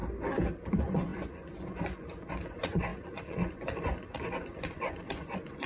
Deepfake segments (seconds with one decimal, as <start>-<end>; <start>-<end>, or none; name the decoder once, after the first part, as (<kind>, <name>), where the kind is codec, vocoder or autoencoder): 0.7-5.7 (vocoder, Vocos)